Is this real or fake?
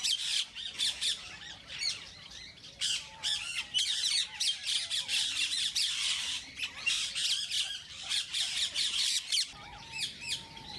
fake